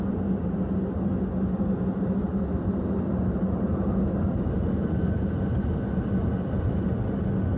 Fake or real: real